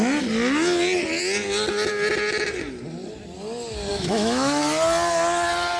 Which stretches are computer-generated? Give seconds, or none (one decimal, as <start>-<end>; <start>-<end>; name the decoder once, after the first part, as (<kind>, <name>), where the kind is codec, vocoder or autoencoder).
3.9-4.6 (autoencoder, DAC-VAE)